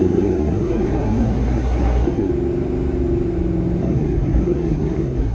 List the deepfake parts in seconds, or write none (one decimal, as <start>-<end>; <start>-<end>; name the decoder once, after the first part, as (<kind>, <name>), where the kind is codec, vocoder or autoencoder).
0.0-2.3 (codec, SNAC); 3.8-5.3